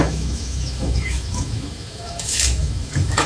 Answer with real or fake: fake